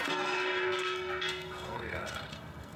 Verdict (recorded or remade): remade